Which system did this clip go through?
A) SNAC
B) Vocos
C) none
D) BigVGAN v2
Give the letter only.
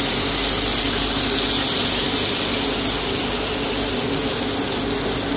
C